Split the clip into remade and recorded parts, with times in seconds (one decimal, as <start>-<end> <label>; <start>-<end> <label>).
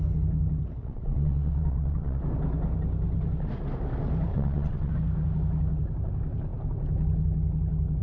0.0-0.8 recorded; 0.8-2.2 remade; 2.2-4.3 recorded; 4.3-4.9 remade; 4.9-8.0 recorded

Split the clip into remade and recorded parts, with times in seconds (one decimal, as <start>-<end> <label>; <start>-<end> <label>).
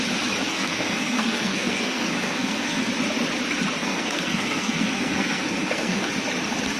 0.0-0.5 recorded; 0.5-2.9 remade; 2.9-3.8 recorded; 3.8-6.1 remade; 6.1-6.8 recorded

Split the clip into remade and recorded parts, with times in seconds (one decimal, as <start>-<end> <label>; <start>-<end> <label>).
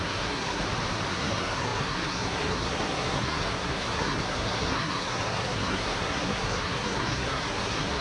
0.0-0.6 remade; 0.6-1.1 recorded; 1.1-8.0 remade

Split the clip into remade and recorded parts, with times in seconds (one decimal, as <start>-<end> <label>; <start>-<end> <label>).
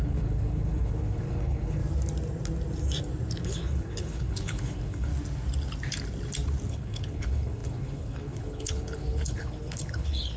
0.0-1.8 remade; 1.8-3.4 recorded; 3.4-5.1 remade; 5.1-6.7 recorded; 6.7-10.4 remade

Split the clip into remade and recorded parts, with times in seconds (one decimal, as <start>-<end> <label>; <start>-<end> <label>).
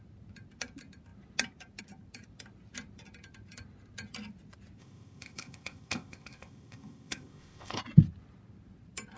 0.0-4.8 recorded; 4.8-7.8 remade; 7.8-9.2 recorded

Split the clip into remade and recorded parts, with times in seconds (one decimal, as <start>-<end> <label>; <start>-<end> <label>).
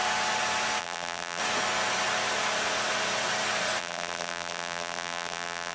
0.0-0.8 recorded; 0.8-1.4 remade; 1.4-3.8 recorded; 3.8-5.7 remade